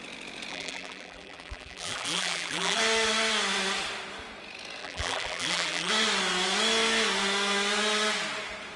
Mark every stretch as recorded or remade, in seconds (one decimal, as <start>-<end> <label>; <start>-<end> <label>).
0.0-0.5 recorded; 0.5-2.8 remade; 2.8-4.8 recorded; 4.8-5.9 remade; 5.9-8.8 recorded